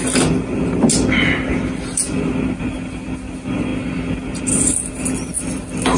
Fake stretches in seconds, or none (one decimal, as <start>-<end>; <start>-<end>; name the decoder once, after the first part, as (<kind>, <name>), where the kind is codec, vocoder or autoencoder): none